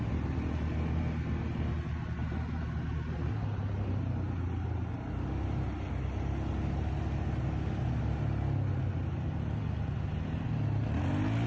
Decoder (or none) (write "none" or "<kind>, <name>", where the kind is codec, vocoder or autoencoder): none